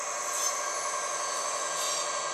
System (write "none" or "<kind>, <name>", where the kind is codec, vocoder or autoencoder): none